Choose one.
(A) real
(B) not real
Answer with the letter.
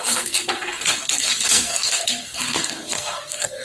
B